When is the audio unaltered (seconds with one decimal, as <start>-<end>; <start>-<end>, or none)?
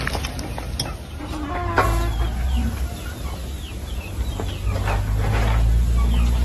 0.0-2.3; 2.9-3.4; 4.1-6.4